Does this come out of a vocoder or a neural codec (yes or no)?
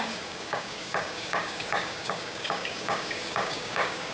yes